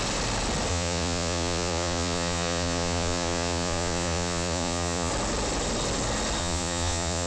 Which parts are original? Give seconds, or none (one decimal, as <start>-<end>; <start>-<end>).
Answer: 0.0-0.7; 5.1-6.4